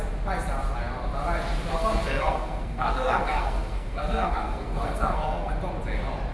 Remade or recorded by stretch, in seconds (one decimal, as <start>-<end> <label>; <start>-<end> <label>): 0.0-1.7 recorded; 1.7-5.5 remade; 5.5-6.3 recorded